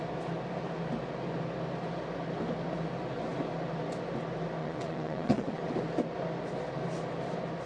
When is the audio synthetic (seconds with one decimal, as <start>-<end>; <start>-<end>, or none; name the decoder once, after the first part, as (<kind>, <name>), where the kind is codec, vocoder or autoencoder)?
4.6-5.6 (vocoder, WaveNeXt)

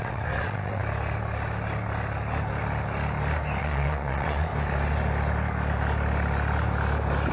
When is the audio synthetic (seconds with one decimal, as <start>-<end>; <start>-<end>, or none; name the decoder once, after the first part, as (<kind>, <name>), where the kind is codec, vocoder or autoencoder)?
0.0-0.8 (vocoder, WaveNeXt); 3.6-4.5

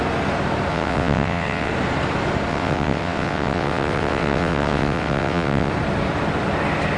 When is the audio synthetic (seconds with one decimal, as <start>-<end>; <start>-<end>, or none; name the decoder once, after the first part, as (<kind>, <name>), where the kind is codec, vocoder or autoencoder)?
0.7-1.7 (vocoder, WaveNeXt); 2.5-5.7

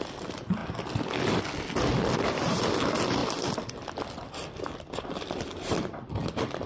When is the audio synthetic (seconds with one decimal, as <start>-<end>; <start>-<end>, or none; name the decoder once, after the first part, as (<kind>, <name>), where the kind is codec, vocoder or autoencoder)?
none

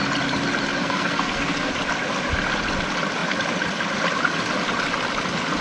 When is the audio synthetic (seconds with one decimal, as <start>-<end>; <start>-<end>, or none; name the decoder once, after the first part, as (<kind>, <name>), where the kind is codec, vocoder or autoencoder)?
0.8-1.7 (codec, SNAC)

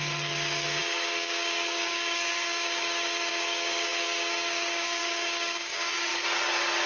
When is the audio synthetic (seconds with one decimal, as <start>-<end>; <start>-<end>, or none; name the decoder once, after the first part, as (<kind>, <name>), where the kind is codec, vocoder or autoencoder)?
0.0-6.1 (codec, DAC)

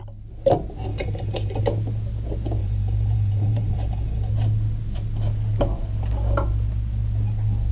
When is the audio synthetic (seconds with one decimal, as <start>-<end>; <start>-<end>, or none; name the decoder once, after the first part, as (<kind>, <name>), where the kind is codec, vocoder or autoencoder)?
0.9-1.6 (vocoder, BigVGAN v2); 2.6-4.3